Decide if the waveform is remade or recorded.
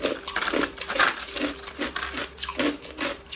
recorded